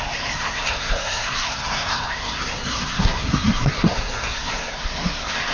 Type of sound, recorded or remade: remade